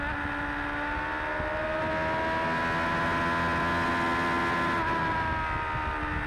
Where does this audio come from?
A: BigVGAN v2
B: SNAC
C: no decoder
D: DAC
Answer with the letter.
C